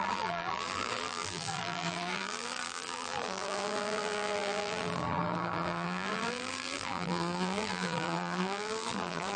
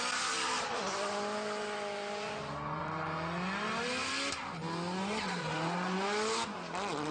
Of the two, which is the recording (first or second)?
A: second